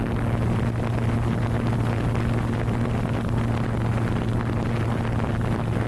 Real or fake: real